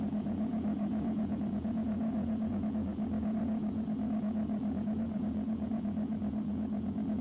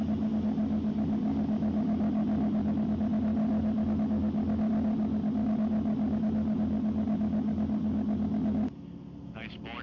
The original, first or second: second